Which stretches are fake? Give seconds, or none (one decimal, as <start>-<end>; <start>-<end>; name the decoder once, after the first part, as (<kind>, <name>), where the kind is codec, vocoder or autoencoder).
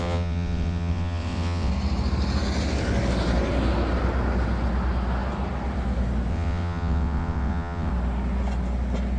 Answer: 0.0-1.7 (vocoder, WaveNeXt); 6.3-7.9